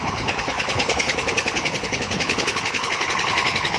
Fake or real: fake